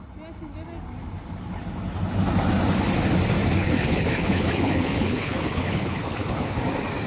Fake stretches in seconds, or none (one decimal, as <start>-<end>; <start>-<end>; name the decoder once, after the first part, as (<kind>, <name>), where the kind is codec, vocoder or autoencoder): 3.6-6.6 (codec, HILCodec)